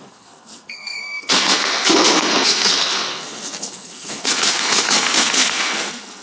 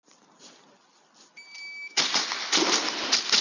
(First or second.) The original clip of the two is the second